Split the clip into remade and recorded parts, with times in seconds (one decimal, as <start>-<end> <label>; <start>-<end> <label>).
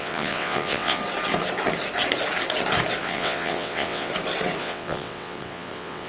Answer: 0.0-1.0 remade; 1.0-3.0 recorded; 3.0-4.1 remade; 4.1-4.6 recorded; 4.6-6.1 remade